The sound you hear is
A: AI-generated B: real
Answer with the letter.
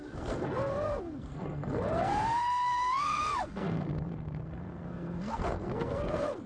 A